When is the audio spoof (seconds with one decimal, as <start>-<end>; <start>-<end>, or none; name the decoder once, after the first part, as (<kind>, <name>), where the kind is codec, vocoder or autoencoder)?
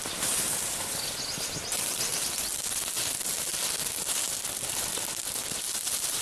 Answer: none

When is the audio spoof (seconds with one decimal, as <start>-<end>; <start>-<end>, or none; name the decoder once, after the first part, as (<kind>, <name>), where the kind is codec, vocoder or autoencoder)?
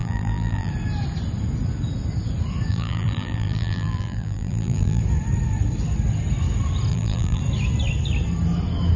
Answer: 0.0-0.7 (vocoder, BigVGAN v2); 2.7-5.0; 6.9-7.4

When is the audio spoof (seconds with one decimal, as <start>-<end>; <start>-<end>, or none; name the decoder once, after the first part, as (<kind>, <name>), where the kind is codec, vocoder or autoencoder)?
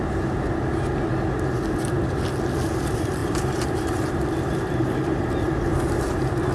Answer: 3.2-5.3 (vocoder, BigVGAN v2); 5.7-6.5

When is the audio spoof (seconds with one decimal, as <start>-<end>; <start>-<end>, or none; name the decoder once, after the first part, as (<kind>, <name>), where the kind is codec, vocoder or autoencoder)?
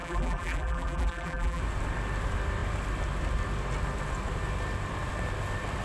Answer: 0.0-1.6 (vocoder, BigVGAN v2)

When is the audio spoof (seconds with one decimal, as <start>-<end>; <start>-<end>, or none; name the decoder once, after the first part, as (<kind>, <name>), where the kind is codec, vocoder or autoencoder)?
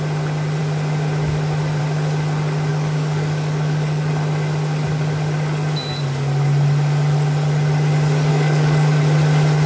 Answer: 2.7-4.1 (codec, DAC); 8.3-9.0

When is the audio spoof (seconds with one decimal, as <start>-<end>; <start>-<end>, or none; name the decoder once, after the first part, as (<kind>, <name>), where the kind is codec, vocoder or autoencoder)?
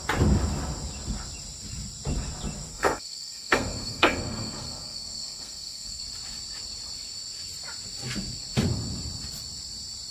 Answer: 2.7-6.0 (codec, SNAC)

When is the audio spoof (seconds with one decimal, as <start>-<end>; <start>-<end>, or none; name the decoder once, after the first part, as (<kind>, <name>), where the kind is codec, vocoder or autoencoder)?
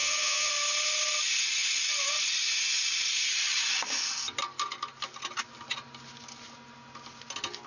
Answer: 0.0-0.5 (vocoder, HiFi-GAN)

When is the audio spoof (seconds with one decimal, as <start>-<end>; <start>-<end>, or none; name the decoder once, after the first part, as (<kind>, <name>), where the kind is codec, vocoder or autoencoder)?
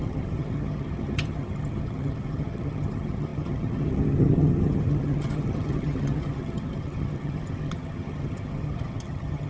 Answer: 0.0-9.5 (vocoder, HiFi-GAN)